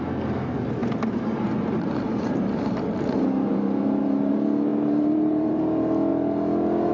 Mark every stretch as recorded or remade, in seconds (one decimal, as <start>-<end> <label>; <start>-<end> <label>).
0.0-0.8 recorded; 0.8-4.3 remade; 4.3-4.7 recorded; 4.7-5.6 remade; 5.6-6.9 recorded